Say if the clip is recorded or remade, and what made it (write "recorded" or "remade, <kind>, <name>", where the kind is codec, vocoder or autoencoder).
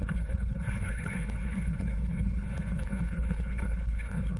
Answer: remade, codec, HILCodec